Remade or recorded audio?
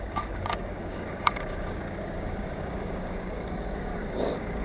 remade